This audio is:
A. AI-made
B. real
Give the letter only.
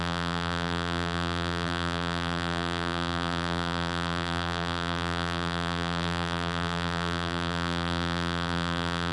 A